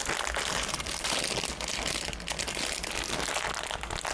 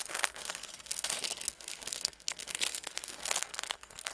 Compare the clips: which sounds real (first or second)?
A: first